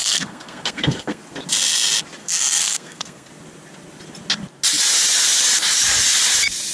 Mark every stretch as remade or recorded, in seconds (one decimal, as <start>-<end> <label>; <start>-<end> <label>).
0.0-1.2 remade; 1.2-2.2 recorded; 2.2-3.3 remade; 3.3-6.7 recorded